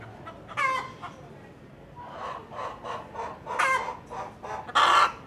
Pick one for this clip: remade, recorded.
recorded